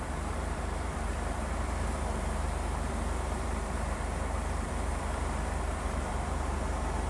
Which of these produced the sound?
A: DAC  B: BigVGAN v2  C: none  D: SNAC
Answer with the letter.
B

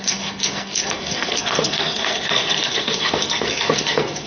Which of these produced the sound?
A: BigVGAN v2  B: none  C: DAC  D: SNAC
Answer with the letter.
D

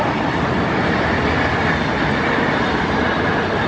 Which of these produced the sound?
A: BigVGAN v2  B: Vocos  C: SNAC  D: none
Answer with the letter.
D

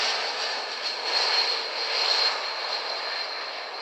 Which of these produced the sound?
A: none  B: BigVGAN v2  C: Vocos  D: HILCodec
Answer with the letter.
A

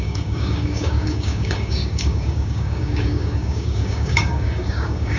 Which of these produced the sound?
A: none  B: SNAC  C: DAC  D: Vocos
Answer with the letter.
C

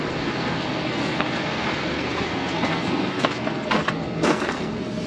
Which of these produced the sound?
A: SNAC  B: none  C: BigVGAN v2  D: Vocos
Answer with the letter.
A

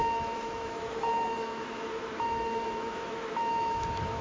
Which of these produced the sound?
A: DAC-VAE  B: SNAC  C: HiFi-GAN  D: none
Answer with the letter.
A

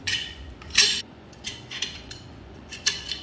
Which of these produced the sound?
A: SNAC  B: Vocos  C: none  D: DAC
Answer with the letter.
B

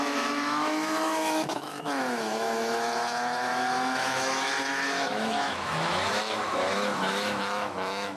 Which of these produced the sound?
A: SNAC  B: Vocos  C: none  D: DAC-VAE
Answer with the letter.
D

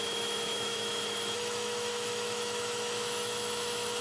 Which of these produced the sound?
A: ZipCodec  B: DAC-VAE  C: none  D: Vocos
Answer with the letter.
B